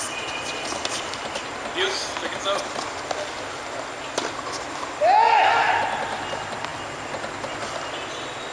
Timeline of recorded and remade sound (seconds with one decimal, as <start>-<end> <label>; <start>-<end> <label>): 0.0-8.5 recorded

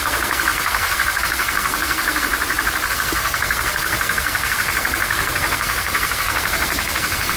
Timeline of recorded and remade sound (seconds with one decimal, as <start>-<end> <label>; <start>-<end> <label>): 0.0-2.3 remade; 2.3-2.9 recorded; 2.9-7.4 remade